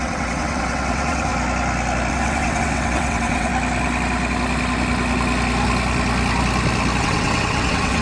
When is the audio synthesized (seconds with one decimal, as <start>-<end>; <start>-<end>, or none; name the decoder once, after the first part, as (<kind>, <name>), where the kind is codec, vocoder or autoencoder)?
0.0-1.3 (vocoder, WaveNeXt); 2.1-3.5; 7.0-8.0